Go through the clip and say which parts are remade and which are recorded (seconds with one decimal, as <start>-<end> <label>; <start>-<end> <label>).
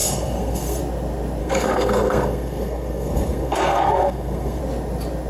0.0-0.8 remade; 0.8-1.4 recorded; 1.4-4.6 remade; 4.6-5.3 recorded